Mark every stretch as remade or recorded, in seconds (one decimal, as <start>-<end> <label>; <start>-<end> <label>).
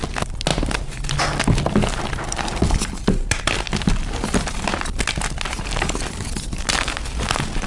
0.0-7.7 recorded